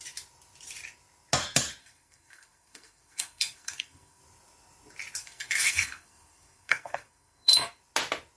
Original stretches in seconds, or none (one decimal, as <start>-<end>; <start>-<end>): 0.0-1.8; 4.2-5.2; 7.8-8.4